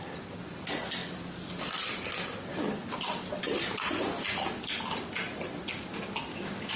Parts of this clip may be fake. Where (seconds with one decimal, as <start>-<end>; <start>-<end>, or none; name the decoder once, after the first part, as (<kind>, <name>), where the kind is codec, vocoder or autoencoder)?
6.3-6.8 (codec, DAC)